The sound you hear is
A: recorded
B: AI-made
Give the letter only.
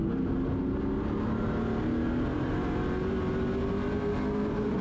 A